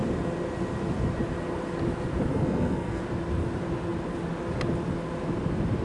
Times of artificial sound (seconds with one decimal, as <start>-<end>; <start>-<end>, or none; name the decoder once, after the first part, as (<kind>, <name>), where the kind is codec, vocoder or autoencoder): 2.3-3.0 (codec, SNAC)